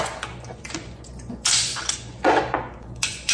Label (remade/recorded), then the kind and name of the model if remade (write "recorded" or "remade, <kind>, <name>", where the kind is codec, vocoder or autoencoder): remade, vocoder, Vocos